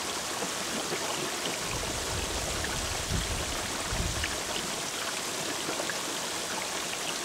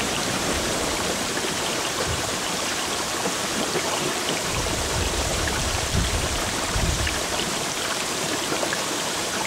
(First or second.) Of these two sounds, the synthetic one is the second